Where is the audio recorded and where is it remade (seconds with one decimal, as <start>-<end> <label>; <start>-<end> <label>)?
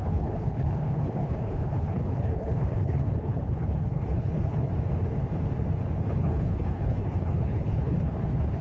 0.0-4.7 remade; 4.7-6.1 recorded; 6.1-8.6 remade